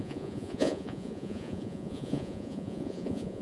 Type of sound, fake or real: fake